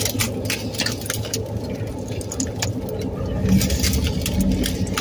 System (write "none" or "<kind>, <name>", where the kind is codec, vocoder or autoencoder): none